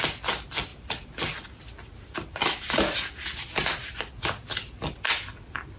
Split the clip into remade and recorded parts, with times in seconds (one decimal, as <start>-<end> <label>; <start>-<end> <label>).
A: 0.0-5.8 recorded